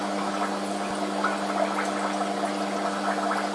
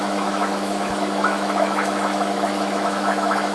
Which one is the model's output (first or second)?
second